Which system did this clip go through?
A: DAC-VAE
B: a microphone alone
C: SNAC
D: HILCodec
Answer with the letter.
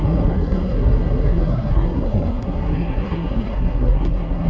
C